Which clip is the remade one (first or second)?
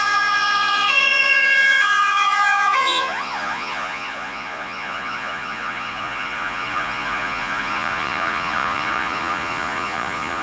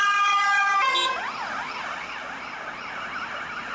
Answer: first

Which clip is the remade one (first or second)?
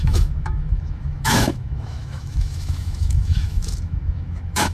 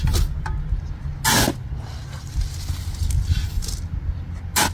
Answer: first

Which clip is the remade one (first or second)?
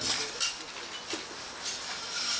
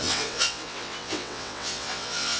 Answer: second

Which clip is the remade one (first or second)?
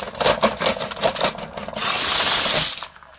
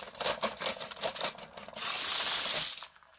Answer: second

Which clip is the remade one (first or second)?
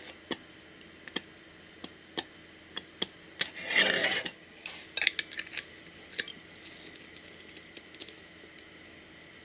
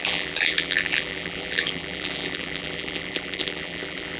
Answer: second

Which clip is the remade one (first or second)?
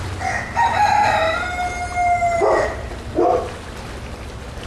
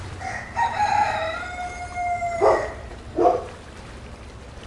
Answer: second